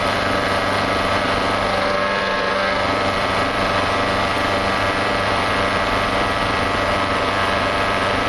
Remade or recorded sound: remade